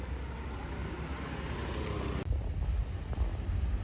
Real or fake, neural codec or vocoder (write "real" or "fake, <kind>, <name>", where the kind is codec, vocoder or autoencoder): real